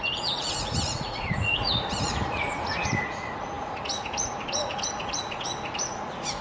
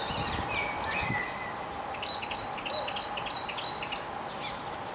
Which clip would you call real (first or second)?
second